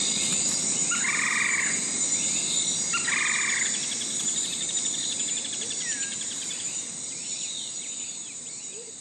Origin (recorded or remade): recorded